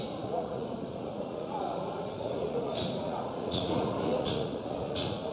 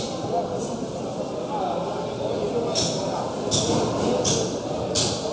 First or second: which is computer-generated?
first